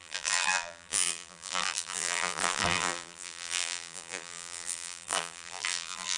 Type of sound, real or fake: fake